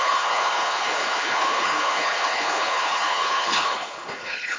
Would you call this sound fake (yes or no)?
yes